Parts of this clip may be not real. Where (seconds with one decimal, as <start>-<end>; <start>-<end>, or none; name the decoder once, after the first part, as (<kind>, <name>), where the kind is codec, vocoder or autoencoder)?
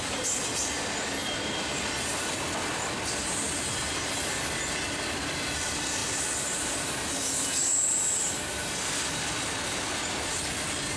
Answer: 1.2-1.7 (vocoder, BigVGAN v2); 6.0-6.8